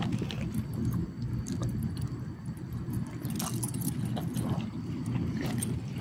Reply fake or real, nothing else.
real